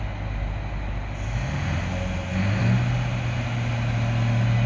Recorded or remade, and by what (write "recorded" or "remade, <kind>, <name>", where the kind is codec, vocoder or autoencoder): recorded